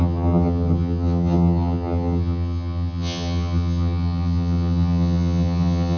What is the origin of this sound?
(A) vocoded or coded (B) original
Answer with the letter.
A